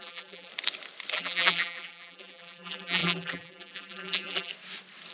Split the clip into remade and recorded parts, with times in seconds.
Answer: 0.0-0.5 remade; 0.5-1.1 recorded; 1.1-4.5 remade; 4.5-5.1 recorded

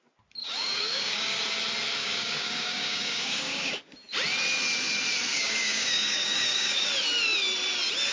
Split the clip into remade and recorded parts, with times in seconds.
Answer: 0.0-0.4 recorded; 0.4-1.4 remade; 1.4-2.0 recorded; 2.0-3.7 remade; 3.7-5.3 recorded; 5.3-6.9 remade; 6.9-8.1 recorded

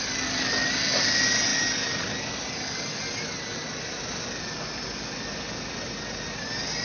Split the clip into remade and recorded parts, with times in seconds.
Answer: 0.0-6.8 recorded

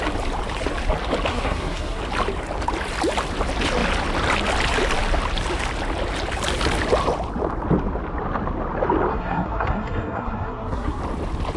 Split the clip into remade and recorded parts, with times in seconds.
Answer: 0.0-1.3 recorded; 1.3-2.0 remade; 2.0-9.1 recorded; 9.1-11.0 remade; 11.0-11.6 recorded

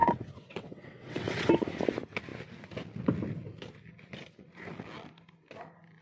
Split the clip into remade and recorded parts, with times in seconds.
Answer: 0.0-1.5 remade; 1.5-6.0 recorded

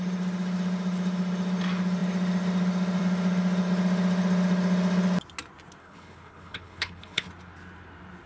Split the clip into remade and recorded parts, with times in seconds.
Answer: 0.0-5.8 recorded; 5.8-7.3 remade; 7.3-8.3 recorded